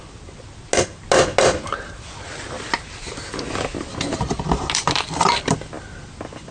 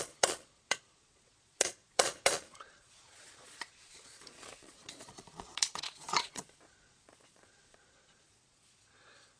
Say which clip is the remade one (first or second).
second